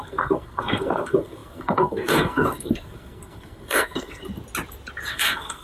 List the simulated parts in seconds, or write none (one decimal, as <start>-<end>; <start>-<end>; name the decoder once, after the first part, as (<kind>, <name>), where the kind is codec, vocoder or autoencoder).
0.0-4.2 (codec, SNAC); 5.1-5.6